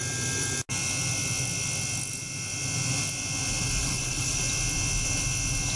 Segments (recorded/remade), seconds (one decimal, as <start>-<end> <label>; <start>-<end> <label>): 0.0-3.8 recorded; 3.8-4.4 remade; 4.4-5.8 recorded